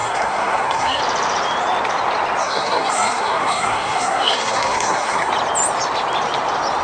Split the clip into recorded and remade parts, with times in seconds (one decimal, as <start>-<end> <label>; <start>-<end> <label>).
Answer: 0.0-1.0 remade; 1.0-2.4 recorded; 2.4-5.3 remade; 5.3-6.8 recorded